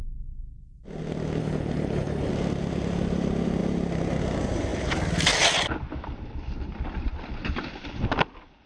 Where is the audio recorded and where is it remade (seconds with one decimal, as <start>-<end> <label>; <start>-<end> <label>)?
0.0-1.4 recorded; 1.4-2.3 remade; 2.3-8.7 recorded